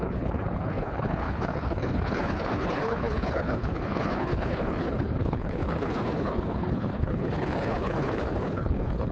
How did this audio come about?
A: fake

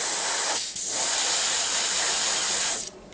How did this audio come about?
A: real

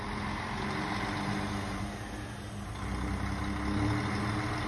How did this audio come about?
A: real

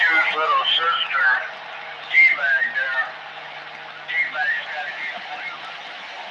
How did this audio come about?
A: real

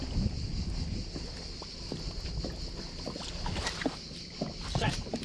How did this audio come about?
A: real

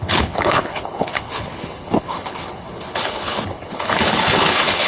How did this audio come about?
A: fake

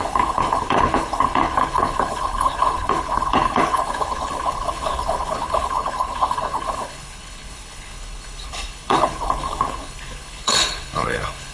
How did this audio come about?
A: fake